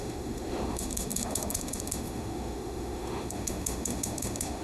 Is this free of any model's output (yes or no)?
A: no